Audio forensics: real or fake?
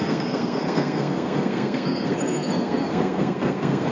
fake